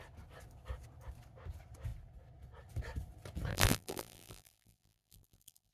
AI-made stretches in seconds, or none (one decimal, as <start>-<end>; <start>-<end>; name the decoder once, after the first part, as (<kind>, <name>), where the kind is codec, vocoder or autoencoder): 3.5-5.7 (vocoder, BigVGAN v2)